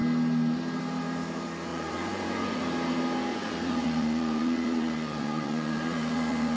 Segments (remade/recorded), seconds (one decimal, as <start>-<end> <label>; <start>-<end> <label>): 0.0-1.7 recorded; 1.7-2.6 remade; 2.6-3.3 recorded; 3.3-6.6 remade